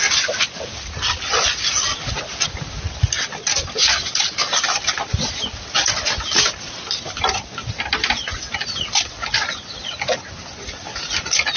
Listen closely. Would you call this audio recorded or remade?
recorded